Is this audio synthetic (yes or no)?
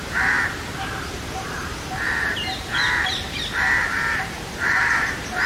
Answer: yes